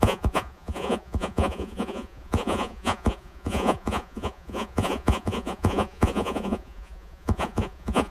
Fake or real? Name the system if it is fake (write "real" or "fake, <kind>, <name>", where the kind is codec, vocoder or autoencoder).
fake, vocoder, Vocos